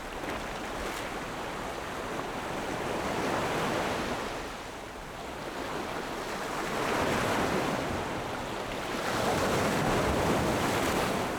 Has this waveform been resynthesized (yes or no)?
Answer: no